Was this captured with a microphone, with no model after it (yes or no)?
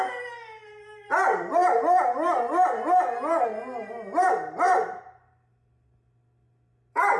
yes